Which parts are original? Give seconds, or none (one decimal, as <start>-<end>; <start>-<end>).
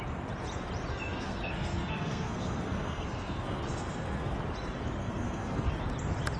0.0-0.9; 4.4-5.0; 5.7-6.4